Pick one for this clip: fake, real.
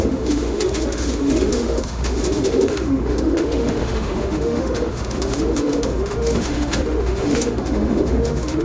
fake